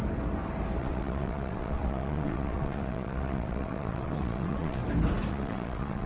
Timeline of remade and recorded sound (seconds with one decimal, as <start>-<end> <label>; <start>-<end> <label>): 0.0-0.8 recorded; 0.8-4.8 remade; 4.8-5.3 recorded; 5.3-6.1 remade